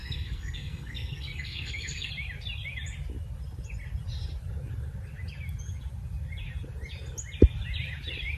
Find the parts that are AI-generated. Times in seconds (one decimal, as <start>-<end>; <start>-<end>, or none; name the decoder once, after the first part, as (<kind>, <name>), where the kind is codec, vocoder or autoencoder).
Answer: 0.0-2.1 (codec, SNAC)